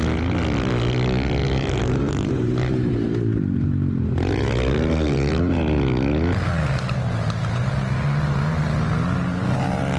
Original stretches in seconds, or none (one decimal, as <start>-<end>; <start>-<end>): 0.0-1.4; 3.4-10.0